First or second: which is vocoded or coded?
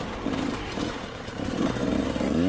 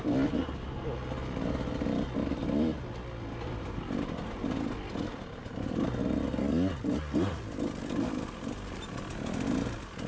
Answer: first